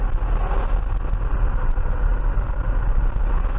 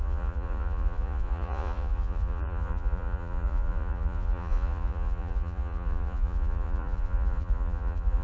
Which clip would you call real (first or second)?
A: first